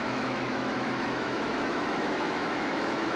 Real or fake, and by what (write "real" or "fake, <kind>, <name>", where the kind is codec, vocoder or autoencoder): fake, autoencoder, DAC-VAE